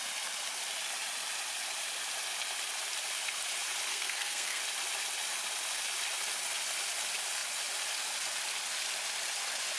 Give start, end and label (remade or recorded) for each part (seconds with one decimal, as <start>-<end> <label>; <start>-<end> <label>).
0.0-3.9 recorded; 3.9-4.6 remade; 4.6-9.8 recorded